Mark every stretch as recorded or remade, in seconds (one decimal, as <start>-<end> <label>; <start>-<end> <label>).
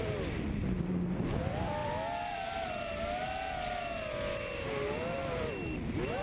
0.0-6.2 recorded